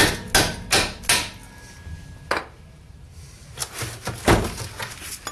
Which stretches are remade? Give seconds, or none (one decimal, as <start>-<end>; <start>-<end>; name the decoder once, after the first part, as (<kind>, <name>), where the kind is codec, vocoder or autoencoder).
none

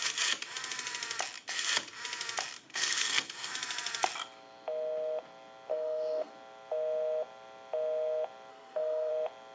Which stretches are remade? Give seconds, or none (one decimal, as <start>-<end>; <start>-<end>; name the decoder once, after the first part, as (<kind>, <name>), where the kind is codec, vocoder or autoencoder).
2.7-3.5 (codec, SNAC); 5.7-6.3; 8.5-9.1